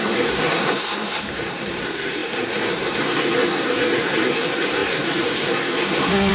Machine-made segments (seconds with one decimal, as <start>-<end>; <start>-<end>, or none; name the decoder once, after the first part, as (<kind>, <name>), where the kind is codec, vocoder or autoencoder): 0.0-6.3 (codec, SNAC)